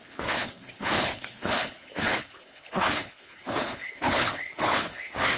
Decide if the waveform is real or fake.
fake